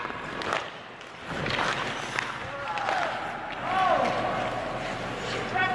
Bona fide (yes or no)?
yes